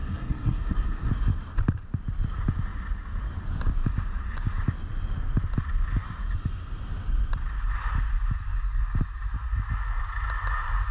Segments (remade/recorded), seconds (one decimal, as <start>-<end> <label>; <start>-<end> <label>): 0.0-1.1 remade; 1.1-10.9 recorded

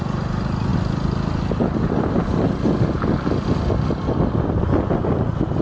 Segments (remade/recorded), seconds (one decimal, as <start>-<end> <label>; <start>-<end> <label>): 0.0-5.6 recorded

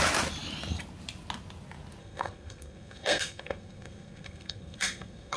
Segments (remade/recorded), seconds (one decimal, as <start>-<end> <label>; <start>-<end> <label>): 0.0-2.0 recorded; 2.0-5.4 remade

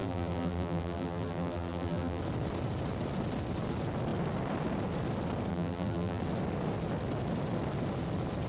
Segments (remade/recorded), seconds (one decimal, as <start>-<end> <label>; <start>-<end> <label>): 0.0-2.2 remade; 2.2-5.5 recorded; 5.5-6.2 remade; 6.2-8.5 recorded

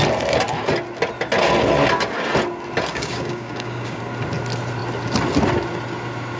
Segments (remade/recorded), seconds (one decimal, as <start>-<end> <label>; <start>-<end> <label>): 0.0-2.9 recorded; 2.9-4.0 remade; 4.0-6.4 recorded